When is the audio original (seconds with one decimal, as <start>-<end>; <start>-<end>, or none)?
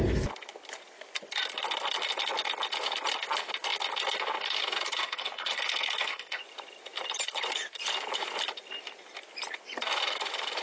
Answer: 0.0-5.0; 6.4-10.6